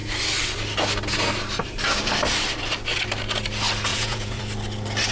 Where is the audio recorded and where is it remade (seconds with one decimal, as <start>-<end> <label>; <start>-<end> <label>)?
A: 0.0-3.9 recorded; 3.9-4.4 remade; 4.4-5.1 recorded